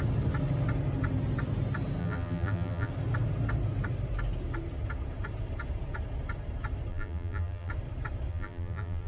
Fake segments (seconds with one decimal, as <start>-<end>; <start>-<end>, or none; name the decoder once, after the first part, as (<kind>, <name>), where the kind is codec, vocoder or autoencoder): 2.0-2.9 (vocoder, BigVGAN v2); 6.9-7.7; 8.3-9.1